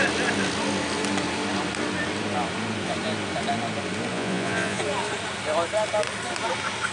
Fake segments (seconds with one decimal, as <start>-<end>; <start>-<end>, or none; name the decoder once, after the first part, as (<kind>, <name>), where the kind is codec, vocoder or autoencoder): 4.1-4.8 (vocoder, Vocos)